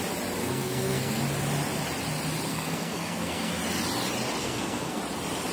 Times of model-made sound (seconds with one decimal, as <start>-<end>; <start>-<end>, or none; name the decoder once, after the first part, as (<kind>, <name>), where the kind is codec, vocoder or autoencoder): 0.4-1.2 (codec, SNAC); 2.5-3.6; 4.4-5.0